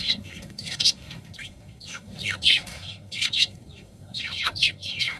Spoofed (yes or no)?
yes